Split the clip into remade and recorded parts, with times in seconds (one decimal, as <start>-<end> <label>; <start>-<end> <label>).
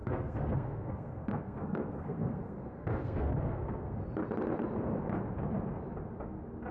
0.0-4.0 remade; 4.0-6.7 recorded